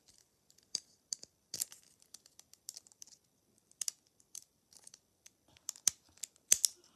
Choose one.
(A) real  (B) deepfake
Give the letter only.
A